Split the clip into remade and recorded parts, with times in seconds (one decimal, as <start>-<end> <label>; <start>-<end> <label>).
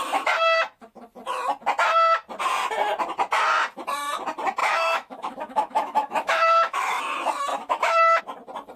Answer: 0.0-4.6 recorded; 4.6-7.0 remade; 7.0-7.5 recorded; 7.5-8.2 remade; 8.2-8.8 recorded